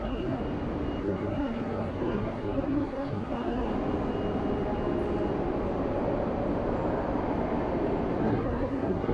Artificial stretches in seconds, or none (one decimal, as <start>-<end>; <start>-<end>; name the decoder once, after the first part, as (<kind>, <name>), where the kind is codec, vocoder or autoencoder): 0.0-0.4 (codec, SNAC); 1.0-3.7; 8.2-9.1